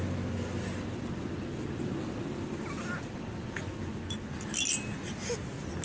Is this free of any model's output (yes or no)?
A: yes